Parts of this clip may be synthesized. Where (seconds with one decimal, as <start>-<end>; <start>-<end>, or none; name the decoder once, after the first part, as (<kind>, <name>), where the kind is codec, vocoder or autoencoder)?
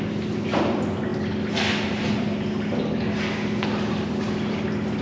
none